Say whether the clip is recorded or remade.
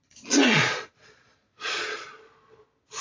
remade